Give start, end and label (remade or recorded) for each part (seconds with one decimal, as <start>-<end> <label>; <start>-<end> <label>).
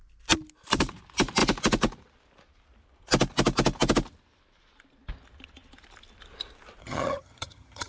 0.0-6.8 recorded; 6.8-7.9 remade